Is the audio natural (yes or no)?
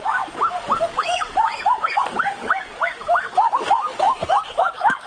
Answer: no